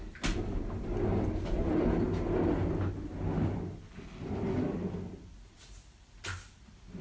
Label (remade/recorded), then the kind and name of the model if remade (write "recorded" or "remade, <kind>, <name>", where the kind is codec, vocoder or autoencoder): recorded